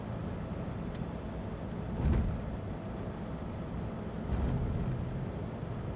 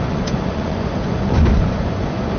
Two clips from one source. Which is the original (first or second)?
first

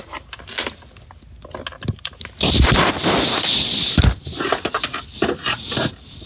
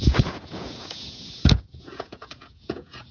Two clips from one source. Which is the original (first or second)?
first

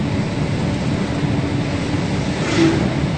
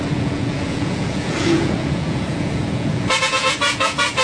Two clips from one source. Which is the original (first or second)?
first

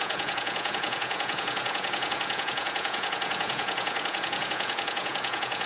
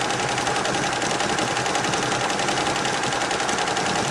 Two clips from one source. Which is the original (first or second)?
second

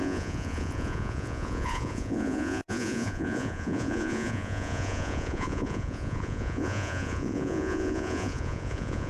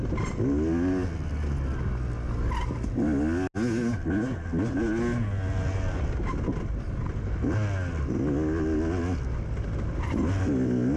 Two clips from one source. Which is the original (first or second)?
second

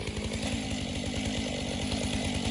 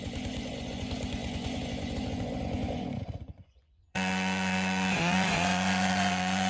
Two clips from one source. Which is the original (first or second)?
first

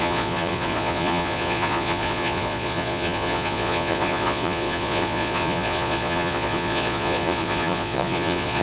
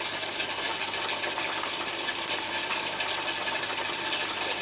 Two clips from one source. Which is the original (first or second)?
second